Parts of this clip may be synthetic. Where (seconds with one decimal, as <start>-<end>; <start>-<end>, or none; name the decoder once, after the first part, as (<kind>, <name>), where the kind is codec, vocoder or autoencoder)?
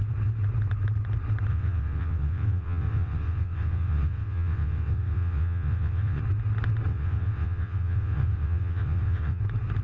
1.5-6.2 (vocoder, WaveNeXt); 6.9-9.4